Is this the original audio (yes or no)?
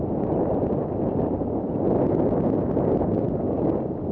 yes